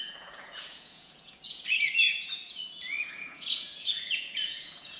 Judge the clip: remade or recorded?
remade